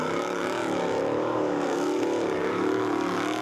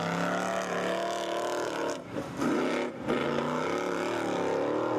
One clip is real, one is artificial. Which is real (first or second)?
second